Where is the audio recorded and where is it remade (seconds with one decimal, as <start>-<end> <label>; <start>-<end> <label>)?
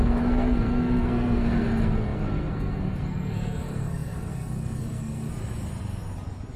0.0-5.3 remade; 5.3-6.6 recorded